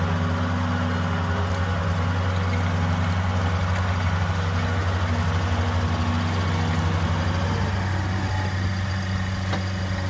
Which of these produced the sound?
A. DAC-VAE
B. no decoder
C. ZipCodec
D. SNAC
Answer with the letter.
B